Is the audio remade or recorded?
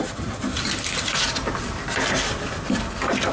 recorded